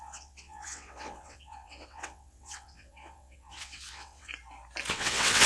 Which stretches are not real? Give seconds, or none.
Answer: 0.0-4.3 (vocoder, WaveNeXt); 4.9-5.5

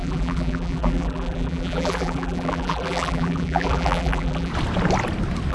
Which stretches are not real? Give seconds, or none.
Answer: 0.0-4.5 (vocoder, BigVGAN v2)

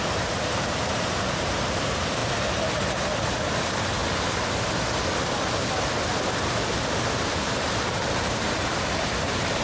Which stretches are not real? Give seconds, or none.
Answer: 0.0-2.2 (vocoder, BigVGAN v2); 3.4-4.0; 7.2-9.6